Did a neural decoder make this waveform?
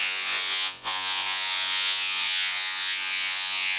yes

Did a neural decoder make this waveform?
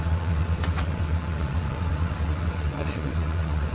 yes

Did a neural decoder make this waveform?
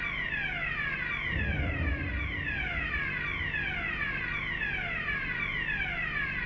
no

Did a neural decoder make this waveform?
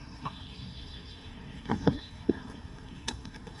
yes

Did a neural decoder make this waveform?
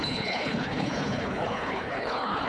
yes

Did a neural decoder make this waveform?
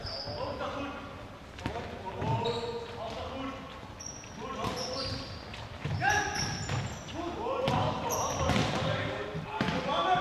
no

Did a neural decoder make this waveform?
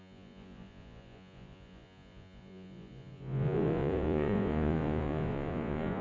yes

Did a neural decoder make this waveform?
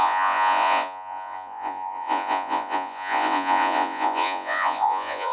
yes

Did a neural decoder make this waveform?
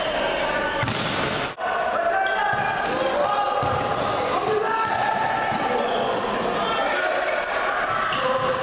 no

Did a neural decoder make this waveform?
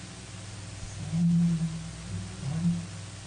no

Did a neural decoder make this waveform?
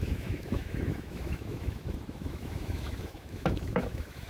yes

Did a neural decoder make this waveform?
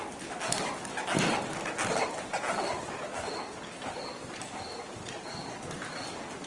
no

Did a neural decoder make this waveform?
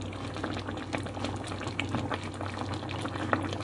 no